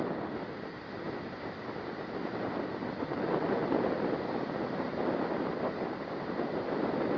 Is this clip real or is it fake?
real